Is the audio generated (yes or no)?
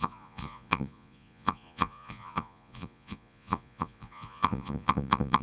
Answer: yes